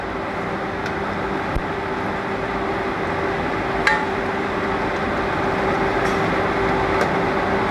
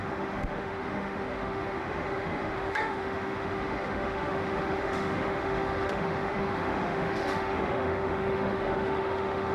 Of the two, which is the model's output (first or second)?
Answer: second